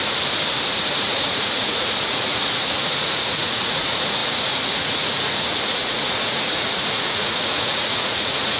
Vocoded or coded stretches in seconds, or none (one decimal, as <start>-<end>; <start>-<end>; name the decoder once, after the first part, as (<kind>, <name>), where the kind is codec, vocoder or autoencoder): 0.7-8.6 (vocoder, Vocos)